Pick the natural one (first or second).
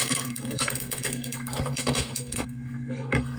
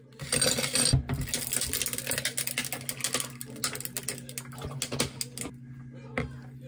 second